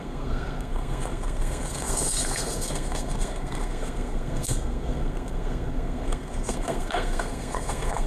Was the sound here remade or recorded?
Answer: remade